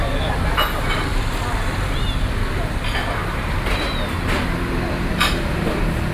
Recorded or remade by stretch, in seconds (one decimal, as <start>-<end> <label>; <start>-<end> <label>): 0.0-3.2 recorded; 3.2-6.1 remade